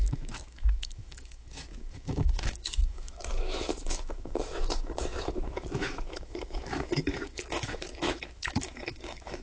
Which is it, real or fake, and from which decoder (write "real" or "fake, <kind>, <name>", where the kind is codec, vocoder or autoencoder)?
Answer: fake, autoencoder, DAC-VAE